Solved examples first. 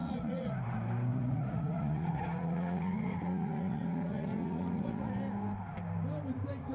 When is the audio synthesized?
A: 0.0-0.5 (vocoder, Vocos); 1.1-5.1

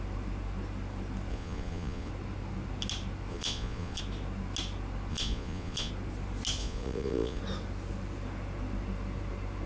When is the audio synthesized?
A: 1.3-2.1 (vocoder, Vocos); 3.3-4.0; 5.1-5.9; 6.6-7.4

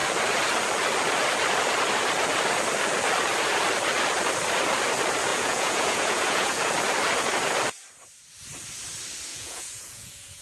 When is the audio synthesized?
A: 5.3-6.7 (vocoder, Vocos); 9.3-10.4